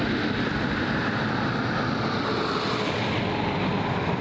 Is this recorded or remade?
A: recorded